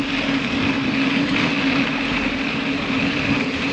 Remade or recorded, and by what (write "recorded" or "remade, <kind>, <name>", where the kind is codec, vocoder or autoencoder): recorded